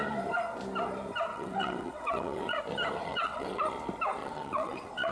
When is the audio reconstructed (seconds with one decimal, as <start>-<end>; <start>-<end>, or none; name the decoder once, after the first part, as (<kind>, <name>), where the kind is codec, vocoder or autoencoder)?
1.3-2.6 (vocoder, WaveNeXt); 3.1-3.6; 4.2-5.1